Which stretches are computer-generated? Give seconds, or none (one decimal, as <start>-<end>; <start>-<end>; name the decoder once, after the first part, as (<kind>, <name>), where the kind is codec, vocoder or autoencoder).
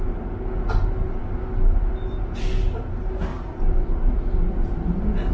3.3-5.3 (vocoder, BigVGAN v2)